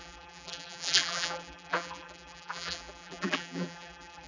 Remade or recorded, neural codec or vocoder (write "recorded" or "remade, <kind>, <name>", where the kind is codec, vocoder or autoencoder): remade, vocoder, BigVGAN v2